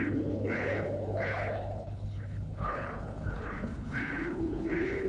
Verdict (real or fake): fake